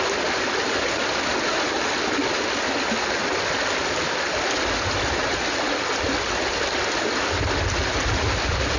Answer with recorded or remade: recorded